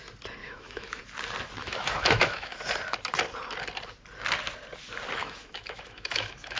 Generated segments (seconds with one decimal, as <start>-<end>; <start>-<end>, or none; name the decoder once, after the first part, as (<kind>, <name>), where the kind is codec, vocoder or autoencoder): 0.4-1.0 (autoencoder, DAC-VAE); 1.6-2.6; 5.2-6.6